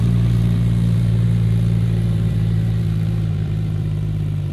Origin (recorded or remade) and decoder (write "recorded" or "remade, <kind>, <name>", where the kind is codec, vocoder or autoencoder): remade, vocoder, BigVGAN v2